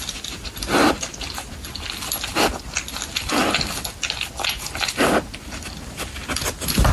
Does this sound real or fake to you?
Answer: real